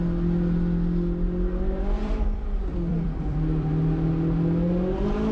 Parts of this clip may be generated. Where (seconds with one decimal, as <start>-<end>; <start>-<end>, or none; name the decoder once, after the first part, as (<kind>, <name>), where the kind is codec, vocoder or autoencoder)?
2.0-3.7 (vocoder, BigVGAN v2)